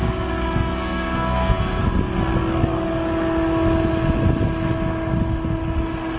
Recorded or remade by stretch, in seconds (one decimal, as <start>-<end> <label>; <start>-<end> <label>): 0.0-0.8 recorded; 0.8-1.8 remade; 1.8-6.2 recorded